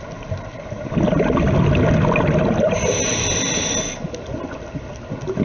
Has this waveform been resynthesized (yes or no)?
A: no